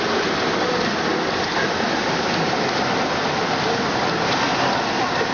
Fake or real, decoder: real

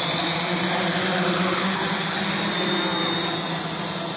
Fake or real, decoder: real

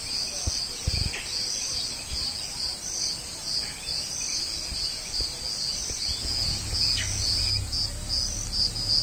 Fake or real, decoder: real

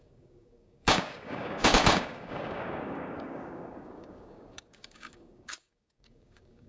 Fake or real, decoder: fake, codec, DAC